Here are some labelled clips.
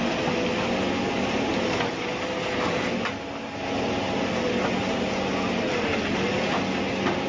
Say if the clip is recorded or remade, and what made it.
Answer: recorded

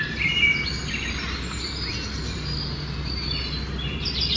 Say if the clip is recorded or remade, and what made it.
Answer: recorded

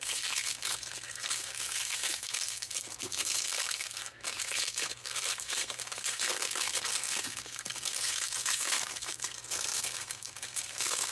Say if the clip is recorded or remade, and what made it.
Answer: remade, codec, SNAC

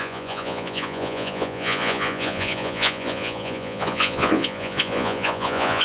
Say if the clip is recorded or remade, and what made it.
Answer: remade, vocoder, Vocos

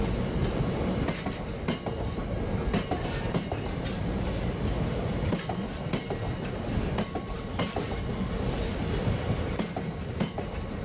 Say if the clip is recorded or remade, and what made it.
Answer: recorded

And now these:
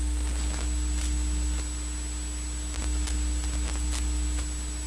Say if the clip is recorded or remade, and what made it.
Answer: recorded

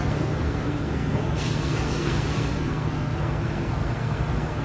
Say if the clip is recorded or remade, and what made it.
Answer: remade, codec, SNAC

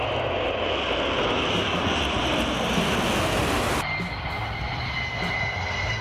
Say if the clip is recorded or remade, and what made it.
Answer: recorded